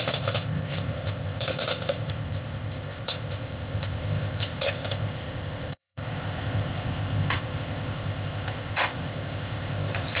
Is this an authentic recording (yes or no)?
no